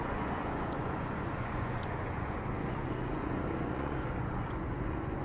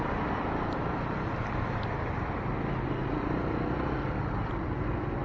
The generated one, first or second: first